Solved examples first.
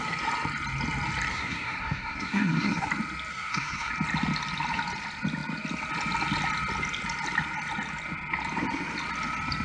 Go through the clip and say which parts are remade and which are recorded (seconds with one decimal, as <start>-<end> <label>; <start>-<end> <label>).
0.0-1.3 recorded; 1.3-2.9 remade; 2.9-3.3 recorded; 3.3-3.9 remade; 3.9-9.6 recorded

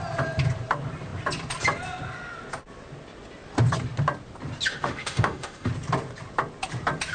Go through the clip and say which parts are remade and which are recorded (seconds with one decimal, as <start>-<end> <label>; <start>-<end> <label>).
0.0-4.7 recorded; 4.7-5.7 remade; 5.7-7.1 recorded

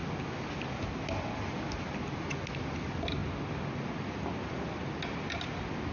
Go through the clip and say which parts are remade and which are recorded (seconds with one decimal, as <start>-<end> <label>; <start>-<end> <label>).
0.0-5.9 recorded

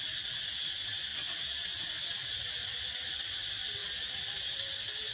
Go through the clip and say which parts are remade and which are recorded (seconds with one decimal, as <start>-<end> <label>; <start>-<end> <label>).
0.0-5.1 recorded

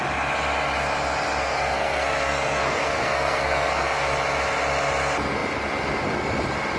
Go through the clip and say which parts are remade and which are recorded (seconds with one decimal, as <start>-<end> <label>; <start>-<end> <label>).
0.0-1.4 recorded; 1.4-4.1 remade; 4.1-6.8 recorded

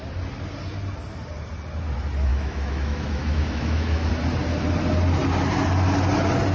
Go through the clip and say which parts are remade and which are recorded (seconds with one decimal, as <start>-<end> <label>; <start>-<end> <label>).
0.0-2.3 recorded; 2.3-4.1 remade; 4.1-6.5 recorded

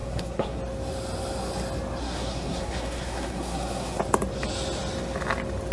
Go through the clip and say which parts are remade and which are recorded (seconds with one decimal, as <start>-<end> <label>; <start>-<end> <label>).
0.0-0.6 remade; 0.6-2.0 recorded; 2.0-4.0 remade; 4.0-5.7 recorded